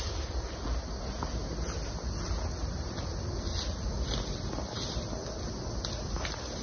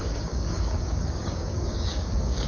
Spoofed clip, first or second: second